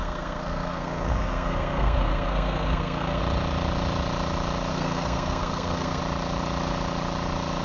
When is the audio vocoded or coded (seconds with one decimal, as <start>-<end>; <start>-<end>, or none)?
0.0-3.2; 4.7-6.0